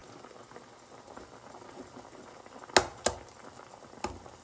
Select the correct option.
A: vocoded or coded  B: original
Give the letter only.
B